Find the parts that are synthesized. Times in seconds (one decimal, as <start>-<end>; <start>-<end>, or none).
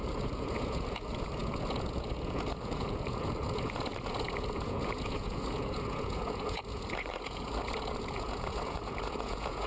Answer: 0.0-9.7